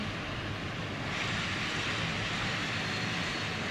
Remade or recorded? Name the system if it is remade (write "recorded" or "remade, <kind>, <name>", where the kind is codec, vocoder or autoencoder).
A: recorded